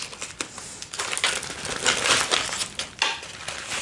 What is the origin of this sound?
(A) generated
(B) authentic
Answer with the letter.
B